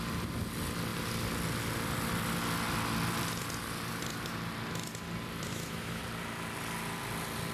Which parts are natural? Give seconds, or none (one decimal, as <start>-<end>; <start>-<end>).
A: 0.0-5.5; 6.0-7.5